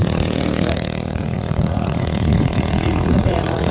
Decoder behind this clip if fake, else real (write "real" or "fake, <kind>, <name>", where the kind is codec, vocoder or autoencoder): fake, vocoder, Vocos